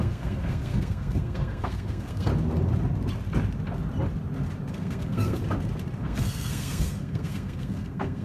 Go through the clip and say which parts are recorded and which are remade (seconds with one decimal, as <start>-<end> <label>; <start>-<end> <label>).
0.0-2.3 remade; 2.3-4.7 recorded; 4.7-5.4 remade; 5.4-6.0 recorded; 6.0-8.2 remade